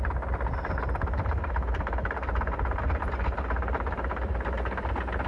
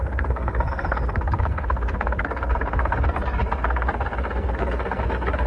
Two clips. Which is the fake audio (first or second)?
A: second